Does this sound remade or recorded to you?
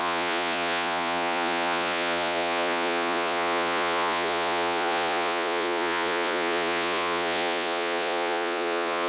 remade